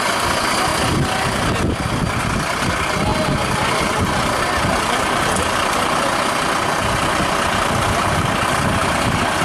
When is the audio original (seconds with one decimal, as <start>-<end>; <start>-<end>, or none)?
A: 0.0-9.4

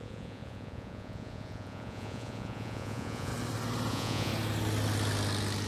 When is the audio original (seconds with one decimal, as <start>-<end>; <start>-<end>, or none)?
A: 3.3-3.9; 4.3-5.7

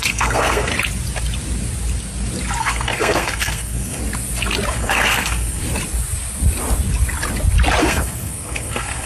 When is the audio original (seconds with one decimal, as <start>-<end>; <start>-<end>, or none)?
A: 0.7-2.6; 4.0-4.7; 5.6-7.8

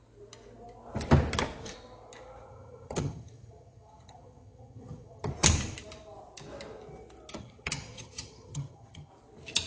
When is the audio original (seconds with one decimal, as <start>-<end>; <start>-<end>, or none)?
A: 0.0-2.5; 5.3-7.4; 9.1-9.7

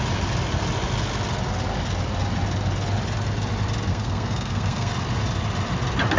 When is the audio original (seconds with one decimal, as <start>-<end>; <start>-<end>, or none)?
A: 0.0-3.9; 4.9-6.2

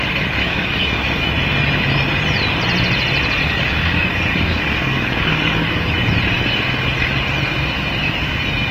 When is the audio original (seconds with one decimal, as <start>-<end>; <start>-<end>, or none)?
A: 0.0-0.4; 1.3-3.4; 5.9-8.7

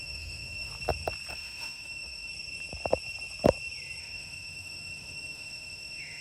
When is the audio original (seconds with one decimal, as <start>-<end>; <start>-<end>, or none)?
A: 0.7-1.3; 2.3-4.0